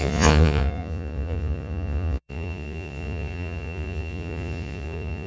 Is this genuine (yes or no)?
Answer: no